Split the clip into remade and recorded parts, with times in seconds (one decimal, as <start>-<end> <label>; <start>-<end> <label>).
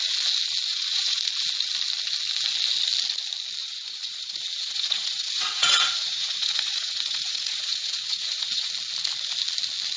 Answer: 0.0-0.7 recorded; 0.7-1.2 remade; 1.2-3.6 recorded; 3.6-8.7 remade; 8.7-10.0 recorded